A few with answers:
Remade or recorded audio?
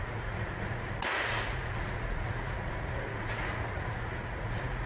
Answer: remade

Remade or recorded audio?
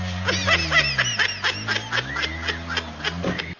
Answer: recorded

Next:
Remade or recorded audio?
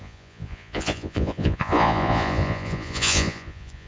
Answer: remade